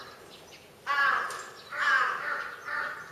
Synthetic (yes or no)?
no